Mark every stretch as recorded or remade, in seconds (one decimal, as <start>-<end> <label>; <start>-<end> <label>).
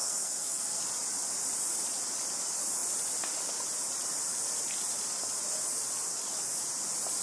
0.0-0.8 remade; 0.8-7.2 recorded